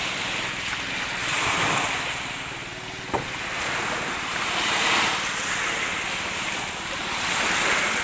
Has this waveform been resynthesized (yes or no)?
no